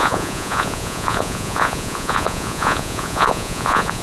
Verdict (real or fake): fake